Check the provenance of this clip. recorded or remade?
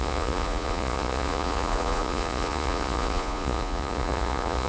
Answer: remade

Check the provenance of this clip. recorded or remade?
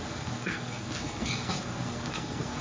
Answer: remade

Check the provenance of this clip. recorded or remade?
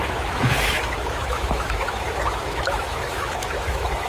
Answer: remade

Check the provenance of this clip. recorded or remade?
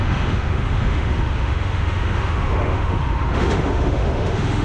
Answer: remade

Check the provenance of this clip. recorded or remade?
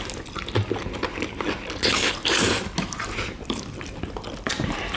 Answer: recorded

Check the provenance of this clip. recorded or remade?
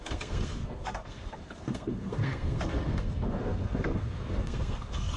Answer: remade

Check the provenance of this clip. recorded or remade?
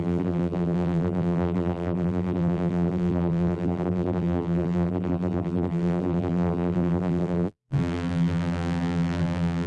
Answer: remade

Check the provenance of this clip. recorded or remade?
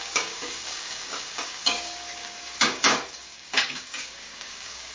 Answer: remade